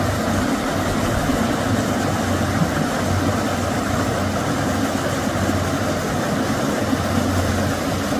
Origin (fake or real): real